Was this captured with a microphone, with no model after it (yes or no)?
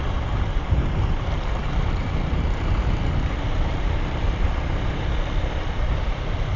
no